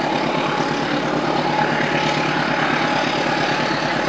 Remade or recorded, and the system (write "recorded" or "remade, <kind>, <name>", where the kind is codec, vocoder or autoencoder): recorded